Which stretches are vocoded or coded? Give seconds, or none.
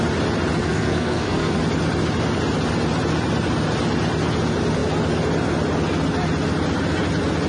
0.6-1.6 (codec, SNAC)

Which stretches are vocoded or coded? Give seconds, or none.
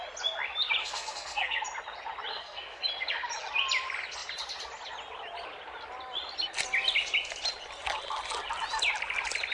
0.8-1.6 (codec, SNAC); 2.3-2.8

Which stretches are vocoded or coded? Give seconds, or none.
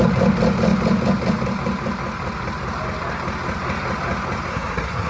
4.5-5.1 (codec, SNAC)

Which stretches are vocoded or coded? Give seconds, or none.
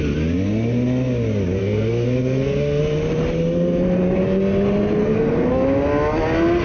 1.6-2.8 (codec, SNAC); 5.0-5.5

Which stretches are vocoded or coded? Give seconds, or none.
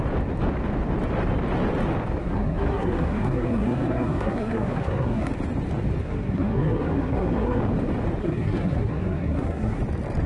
2.2-5.3 (codec, SNAC); 6.0-7.6; 8.2-9.8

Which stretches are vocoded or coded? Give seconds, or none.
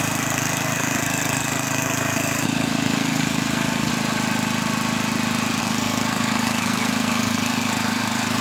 0.0-3.9 (codec, SNAC); 5.6-8.4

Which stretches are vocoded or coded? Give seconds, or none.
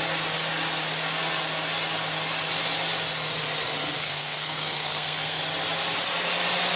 4.0-5.4 (codec, SNAC)